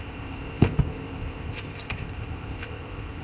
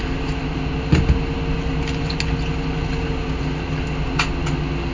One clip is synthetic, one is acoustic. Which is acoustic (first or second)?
second